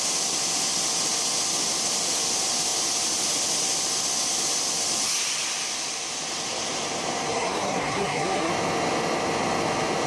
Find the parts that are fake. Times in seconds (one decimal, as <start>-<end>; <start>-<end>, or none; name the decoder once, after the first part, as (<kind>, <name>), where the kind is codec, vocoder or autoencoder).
7.3-8.5 (codec, SNAC)